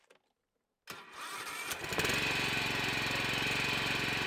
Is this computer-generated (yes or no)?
no